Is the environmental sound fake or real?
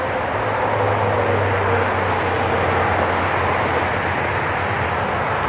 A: real